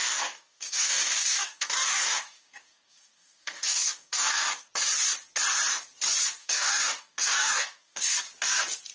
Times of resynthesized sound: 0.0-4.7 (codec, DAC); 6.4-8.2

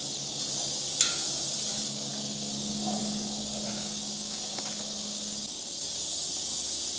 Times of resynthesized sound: 0.0-7.0 (codec, DAC)